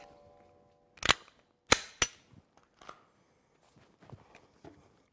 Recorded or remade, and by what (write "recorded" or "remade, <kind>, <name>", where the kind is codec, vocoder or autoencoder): recorded